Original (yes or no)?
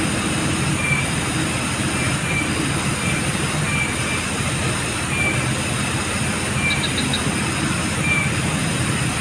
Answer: yes